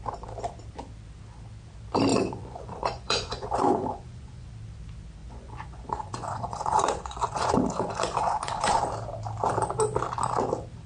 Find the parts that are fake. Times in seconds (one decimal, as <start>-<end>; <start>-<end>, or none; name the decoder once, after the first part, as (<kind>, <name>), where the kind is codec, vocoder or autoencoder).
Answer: 2.1-4.5 (vocoder, Vocos); 5.2-8.8